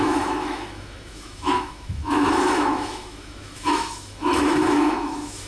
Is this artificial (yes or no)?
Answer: yes